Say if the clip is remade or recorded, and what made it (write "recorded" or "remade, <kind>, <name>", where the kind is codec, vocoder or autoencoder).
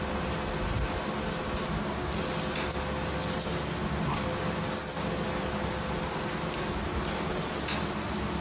recorded